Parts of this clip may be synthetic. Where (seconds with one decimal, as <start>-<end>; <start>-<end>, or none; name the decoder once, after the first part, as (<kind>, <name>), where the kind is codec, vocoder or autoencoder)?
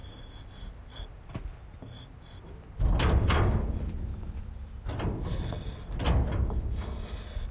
none